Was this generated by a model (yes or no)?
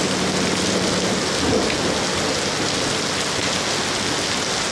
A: no